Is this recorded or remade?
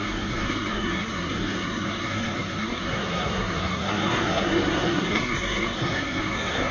remade